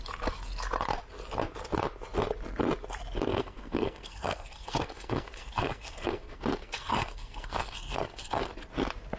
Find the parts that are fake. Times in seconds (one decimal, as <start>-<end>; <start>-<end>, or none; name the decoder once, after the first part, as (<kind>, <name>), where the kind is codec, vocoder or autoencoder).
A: 3.3-8.5 (codec, SNAC)